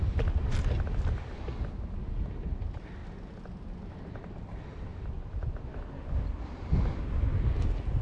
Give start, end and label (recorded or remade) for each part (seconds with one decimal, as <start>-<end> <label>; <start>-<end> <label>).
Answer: 0.0-8.0 recorded